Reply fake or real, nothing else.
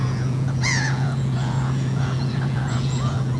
fake